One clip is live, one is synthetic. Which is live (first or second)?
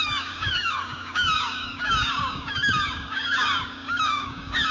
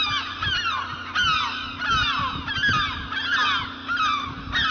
second